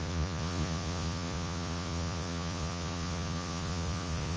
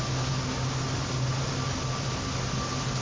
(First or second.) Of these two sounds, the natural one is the second